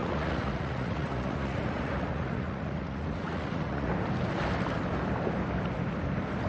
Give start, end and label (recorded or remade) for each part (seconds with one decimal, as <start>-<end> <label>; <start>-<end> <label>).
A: 0.0-3.9 remade; 3.9-6.5 recorded